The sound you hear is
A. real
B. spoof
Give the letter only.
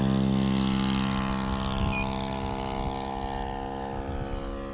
A